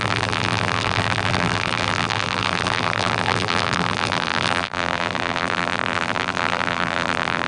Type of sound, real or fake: fake